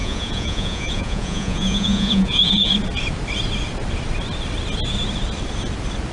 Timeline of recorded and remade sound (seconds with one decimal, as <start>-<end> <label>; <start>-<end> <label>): 0.0-2.7 remade; 2.7-6.1 recorded